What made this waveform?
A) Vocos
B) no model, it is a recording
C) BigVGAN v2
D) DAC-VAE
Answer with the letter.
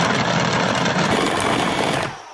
B